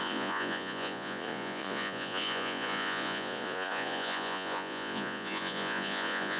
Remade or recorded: remade